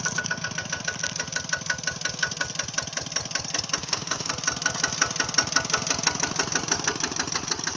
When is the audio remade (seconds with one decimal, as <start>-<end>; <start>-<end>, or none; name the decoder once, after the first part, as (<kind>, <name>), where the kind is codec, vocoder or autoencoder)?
3.8-4.3 (autoencoder, DAC-VAE)